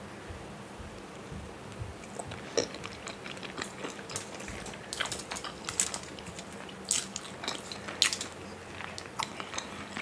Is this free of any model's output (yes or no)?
yes